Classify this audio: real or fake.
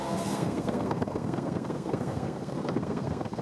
fake